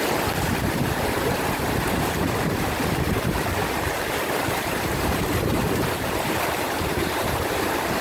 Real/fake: fake